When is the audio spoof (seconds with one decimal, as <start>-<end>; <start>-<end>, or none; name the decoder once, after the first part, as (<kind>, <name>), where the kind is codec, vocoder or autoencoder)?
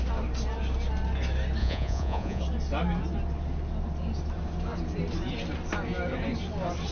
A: 1.6-2.4 (vocoder, Vocos)